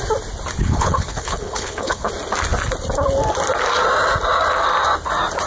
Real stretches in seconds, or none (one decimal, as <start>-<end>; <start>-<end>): 0.0-0.6; 2.1-5.5